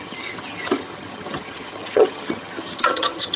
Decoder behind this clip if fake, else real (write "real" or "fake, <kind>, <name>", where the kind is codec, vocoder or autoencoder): fake, vocoder, HiFi-GAN